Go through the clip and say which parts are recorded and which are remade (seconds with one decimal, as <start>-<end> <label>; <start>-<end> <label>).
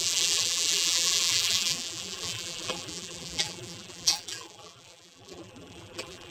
0.0-6.3 remade